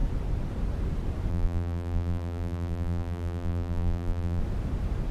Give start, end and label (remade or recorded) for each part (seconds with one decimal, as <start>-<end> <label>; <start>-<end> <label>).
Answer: 0.0-1.3 recorded; 1.3-4.4 remade; 4.4-5.1 recorded